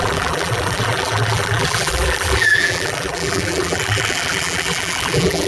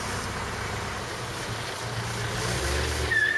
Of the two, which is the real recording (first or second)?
second